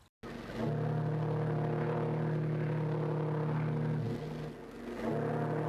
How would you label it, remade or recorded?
recorded